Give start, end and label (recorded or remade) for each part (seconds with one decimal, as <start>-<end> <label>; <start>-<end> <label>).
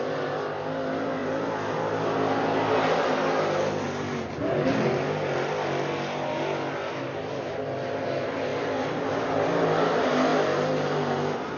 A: 0.0-11.6 recorded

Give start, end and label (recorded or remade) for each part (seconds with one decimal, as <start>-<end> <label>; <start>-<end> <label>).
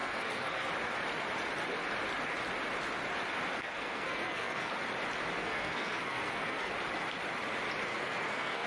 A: 0.0-0.7 remade; 0.7-3.5 recorded; 3.5-4.7 remade; 4.7-5.4 recorded; 5.4-6.7 remade; 6.7-7.9 recorded; 7.9-8.7 remade